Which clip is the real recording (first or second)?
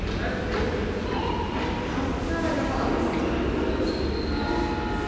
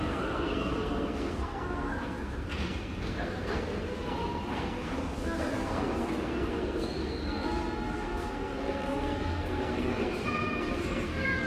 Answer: first